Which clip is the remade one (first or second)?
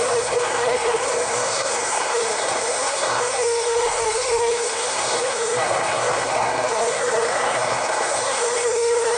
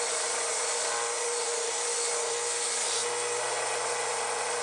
first